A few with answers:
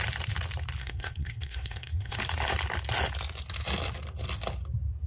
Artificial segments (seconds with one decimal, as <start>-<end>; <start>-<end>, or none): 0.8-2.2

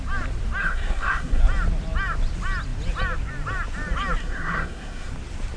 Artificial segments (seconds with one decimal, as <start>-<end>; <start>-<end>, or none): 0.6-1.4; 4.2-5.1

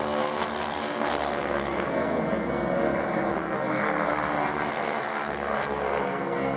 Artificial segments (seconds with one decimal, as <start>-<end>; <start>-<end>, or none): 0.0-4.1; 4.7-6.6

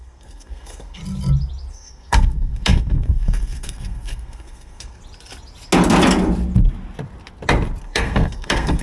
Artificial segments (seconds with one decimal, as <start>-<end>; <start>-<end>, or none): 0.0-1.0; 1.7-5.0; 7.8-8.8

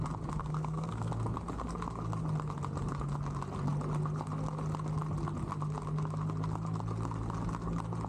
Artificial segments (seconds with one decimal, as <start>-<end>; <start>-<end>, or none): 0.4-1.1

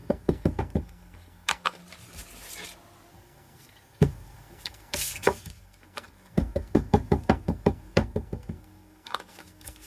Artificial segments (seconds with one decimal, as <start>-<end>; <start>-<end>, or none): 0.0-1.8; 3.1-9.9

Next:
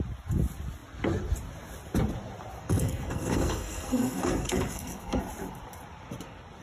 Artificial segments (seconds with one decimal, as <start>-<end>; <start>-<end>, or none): 2.6-5.2

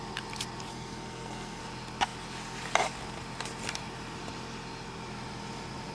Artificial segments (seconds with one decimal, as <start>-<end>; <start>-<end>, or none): 0.7-1.6